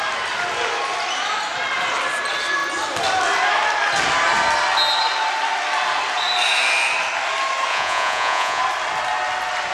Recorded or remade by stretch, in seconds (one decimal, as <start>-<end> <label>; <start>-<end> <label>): 0.0-7.7 recorded; 7.7-8.6 remade; 8.6-9.7 recorded